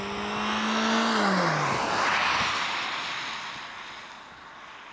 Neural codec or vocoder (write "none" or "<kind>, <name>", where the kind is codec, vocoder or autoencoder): none